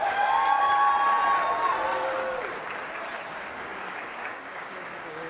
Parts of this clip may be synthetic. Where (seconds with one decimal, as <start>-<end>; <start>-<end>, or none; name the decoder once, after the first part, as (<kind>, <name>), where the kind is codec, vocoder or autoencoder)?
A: 0.0-0.7 (codec, DAC); 3.3-5.3